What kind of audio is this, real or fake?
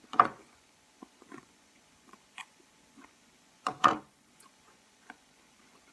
fake